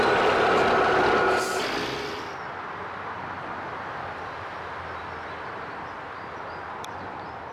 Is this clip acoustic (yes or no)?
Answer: yes